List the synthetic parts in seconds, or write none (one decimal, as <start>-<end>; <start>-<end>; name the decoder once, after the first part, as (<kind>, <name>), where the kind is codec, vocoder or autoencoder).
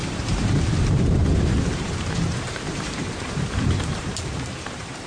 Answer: 0.0-5.1 (vocoder, BigVGAN v2)